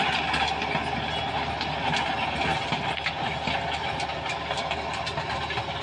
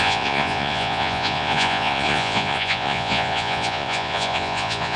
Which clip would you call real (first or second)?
first